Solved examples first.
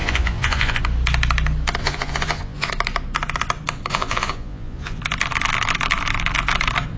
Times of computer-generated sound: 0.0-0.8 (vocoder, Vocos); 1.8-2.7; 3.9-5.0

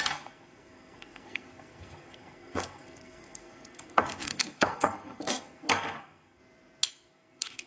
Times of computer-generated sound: 0.0-6.4 (codec, SNAC); 6.9-7.7